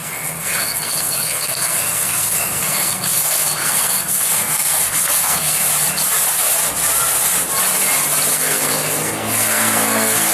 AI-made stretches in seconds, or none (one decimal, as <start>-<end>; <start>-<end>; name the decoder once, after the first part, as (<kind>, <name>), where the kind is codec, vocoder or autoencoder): 0.0-5.6 (codec, SNAC); 8.3-10.3